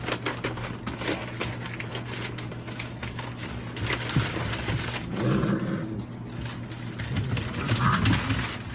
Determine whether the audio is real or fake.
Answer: real